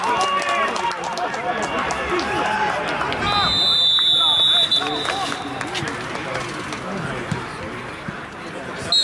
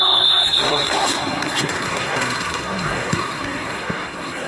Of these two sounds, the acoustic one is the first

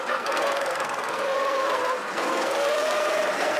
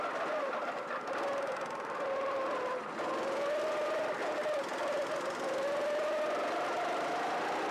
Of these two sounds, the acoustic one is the second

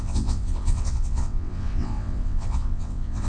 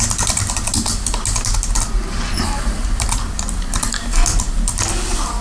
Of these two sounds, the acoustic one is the second